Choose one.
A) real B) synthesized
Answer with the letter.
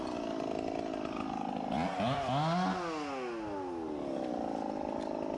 A